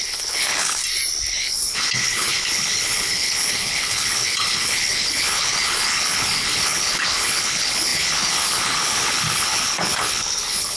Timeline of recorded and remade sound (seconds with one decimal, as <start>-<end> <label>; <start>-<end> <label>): 0.0-0.8 remade; 0.8-1.3 recorded; 1.3-10.8 remade